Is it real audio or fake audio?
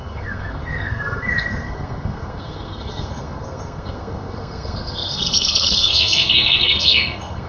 fake